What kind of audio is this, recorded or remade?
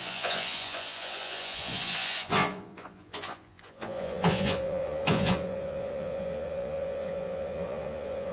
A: remade